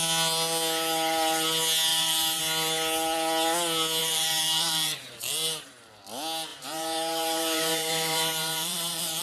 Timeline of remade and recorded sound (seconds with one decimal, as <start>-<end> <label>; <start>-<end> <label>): 0.0-1.9 recorded; 1.9-2.4 remade; 2.4-4.0 recorded; 4.0-6.0 remade; 6.0-6.5 recorded; 6.5-9.2 remade